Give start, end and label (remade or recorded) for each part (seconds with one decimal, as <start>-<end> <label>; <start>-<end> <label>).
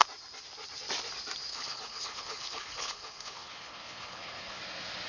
0.0-1.5 recorded; 1.5-4.6 remade; 4.6-5.1 recorded